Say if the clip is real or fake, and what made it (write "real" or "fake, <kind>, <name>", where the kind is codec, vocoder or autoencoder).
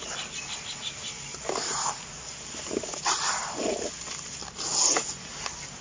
real